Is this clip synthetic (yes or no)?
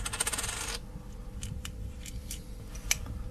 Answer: no